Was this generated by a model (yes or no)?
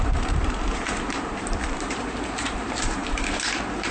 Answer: yes